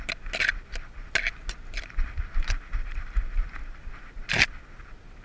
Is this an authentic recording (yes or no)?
yes